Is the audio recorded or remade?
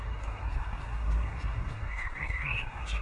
remade